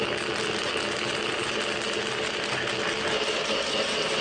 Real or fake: real